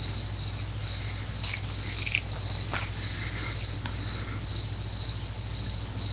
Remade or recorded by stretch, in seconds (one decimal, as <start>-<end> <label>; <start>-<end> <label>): 0.0-6.1 recorded